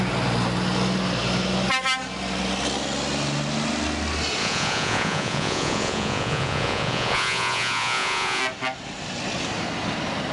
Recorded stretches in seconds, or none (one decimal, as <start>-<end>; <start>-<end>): 0.0-4.4; 8.4-10.3